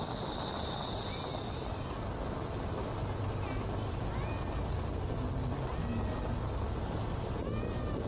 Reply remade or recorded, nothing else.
recorded